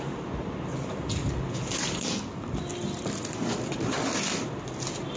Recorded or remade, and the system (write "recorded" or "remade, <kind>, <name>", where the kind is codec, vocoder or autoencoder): recorded